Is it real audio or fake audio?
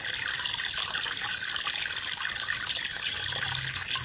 real